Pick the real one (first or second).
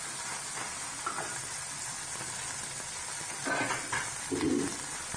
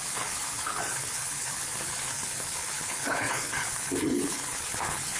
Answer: first